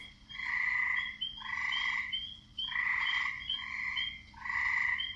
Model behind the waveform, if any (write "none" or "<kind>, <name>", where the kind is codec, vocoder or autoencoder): vocoder, Vocos